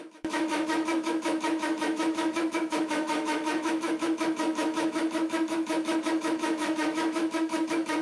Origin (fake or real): fake